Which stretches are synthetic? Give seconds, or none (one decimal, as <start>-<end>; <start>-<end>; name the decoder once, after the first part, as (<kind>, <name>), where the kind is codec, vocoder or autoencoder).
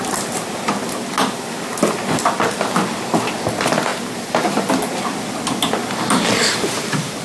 0.0-7.2 (vocoder, BigVGAN v2)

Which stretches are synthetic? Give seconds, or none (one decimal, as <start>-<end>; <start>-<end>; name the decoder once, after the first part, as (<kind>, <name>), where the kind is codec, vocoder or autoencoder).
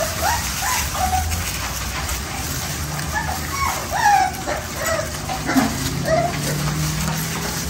none